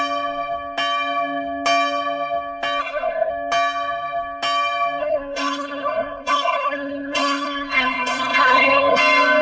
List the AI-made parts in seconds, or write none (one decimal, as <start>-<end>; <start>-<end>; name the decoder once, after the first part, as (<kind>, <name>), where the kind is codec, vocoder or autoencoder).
2.8-3.3 (codec, SNAC); 5.0-9.0